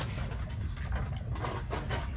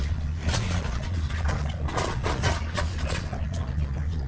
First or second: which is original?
first